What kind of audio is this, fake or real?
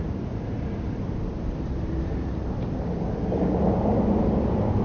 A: real